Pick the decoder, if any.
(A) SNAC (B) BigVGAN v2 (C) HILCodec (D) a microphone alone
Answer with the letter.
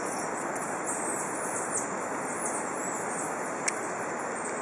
D